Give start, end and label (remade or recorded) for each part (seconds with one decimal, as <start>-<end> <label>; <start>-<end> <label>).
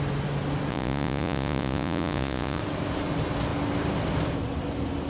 0.0-0.7 recorded; 0.7-2.6 remade; 2.6-5.1 recorded